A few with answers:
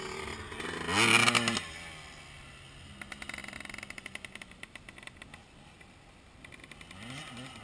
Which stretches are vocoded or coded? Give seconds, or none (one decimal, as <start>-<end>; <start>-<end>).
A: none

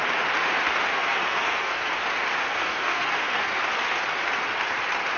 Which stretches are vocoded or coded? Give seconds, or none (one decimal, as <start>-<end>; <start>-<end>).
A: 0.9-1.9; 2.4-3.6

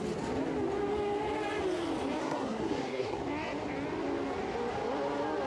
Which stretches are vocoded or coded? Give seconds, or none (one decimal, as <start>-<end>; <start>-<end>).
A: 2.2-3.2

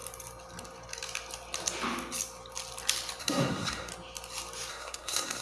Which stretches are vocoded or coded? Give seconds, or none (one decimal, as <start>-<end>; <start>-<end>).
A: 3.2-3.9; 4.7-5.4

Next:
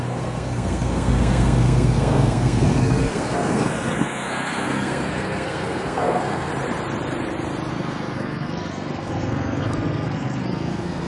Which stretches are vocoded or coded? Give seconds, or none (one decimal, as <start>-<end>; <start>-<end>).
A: 0.0-6.5; 7.7-11.1

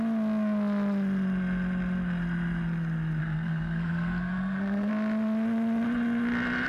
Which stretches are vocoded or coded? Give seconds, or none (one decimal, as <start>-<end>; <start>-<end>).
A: 3.2-4.9

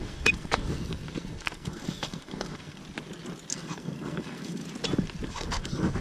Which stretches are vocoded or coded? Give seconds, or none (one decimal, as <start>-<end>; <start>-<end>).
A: 0.0-2.8; 3.5-4.6; 5.3-6.0

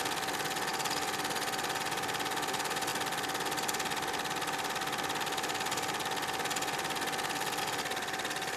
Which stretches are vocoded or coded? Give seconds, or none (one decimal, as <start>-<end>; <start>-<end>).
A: none